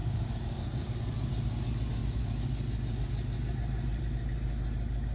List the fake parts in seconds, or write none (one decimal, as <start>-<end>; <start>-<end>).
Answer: 0.0-1.0

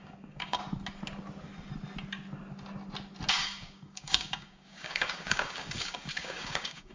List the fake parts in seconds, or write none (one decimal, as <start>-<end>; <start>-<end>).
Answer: 0.0-0.6; 3.3-6.9

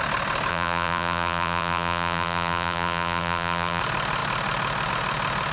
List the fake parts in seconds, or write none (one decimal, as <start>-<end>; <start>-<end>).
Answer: 0.5-3.8

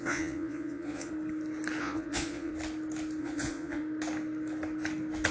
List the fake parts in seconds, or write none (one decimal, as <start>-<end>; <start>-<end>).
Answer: 0.0-1.1; 1.8-2.5; 3.2-3.8

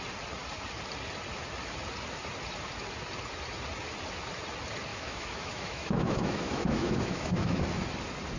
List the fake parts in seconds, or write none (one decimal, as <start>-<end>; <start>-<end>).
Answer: 4.9-7.6

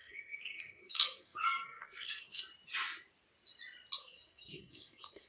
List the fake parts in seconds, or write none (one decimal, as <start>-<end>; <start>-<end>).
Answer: 0.0-2.4; 4.0-5.3